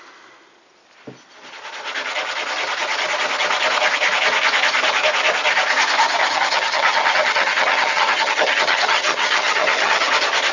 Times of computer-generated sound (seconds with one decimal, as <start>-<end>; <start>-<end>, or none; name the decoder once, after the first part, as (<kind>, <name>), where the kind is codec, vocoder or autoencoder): 6.2-10.1 (vocoder, HiFi-GAN)